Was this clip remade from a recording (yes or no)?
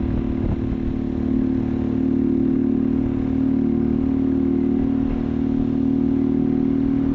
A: no